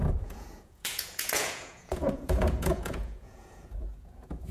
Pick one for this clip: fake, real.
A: fake